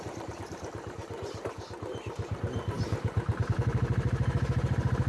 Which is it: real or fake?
fake